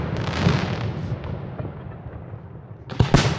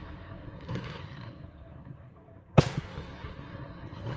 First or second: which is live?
first